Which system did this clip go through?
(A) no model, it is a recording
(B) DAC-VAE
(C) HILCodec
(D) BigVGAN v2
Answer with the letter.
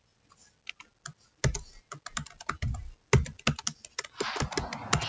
A